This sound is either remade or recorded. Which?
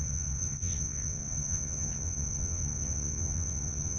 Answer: remade